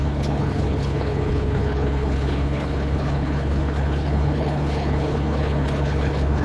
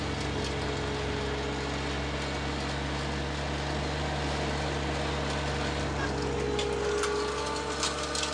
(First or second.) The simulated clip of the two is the first